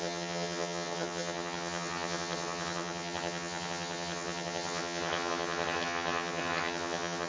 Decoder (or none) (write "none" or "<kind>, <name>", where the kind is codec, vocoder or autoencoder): vocoder, HiFi-GAN